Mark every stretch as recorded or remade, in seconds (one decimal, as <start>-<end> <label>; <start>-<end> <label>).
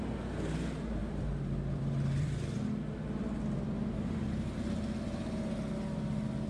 0.0-1.0 recorded; 1.0-4.2 remade; 4.2-6.5 recorded